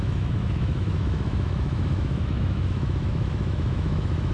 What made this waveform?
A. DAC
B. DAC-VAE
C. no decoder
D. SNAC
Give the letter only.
B